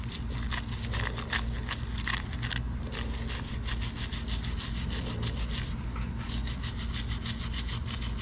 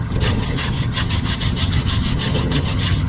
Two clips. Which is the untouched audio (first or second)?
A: first